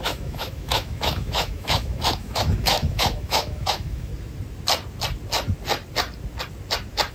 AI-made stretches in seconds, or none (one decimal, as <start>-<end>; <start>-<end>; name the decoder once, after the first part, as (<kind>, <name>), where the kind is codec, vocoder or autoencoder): 0.0-4.1 (autoencoder, DAC-VAE)